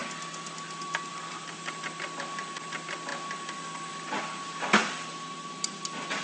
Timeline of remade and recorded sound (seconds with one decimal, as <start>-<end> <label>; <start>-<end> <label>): 0.0-6.2 recorded